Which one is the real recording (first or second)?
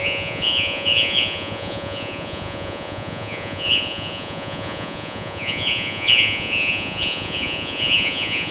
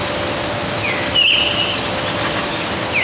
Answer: second